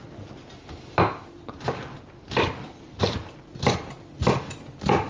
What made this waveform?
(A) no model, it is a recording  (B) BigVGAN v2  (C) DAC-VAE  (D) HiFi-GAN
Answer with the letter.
A